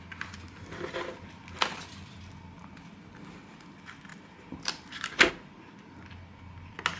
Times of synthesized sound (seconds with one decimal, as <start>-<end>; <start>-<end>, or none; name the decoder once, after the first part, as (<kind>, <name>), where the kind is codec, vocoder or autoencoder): none